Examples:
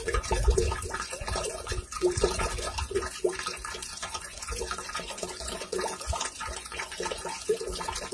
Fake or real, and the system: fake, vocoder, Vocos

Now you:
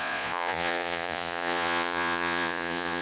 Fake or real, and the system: fake, vocoder, Vocos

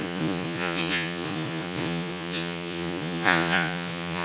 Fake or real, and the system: fake, vocoder, Vocos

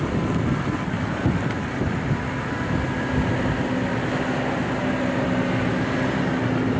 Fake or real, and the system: real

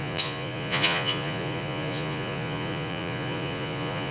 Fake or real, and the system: fake, vocoder, Vocos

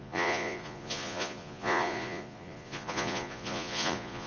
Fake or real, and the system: fake, vocoder, Vocos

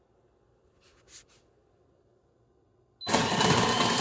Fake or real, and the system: real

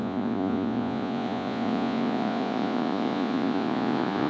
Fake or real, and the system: fake, vocoder, Vocos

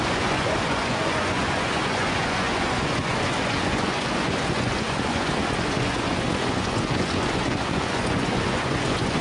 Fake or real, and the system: fake, vocoder, Vocos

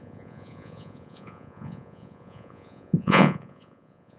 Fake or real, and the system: fake, vocoder, Vocos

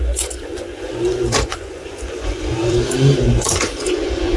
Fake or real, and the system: fake, vocoder, Vocos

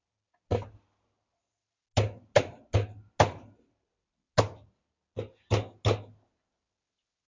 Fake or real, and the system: real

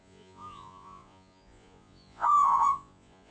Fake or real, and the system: fake, vocoder, Vocos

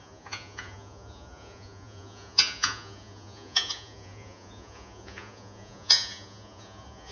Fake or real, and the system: fake, vocoder, Vocos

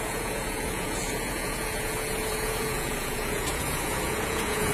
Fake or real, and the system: fake, vocoder, Vocos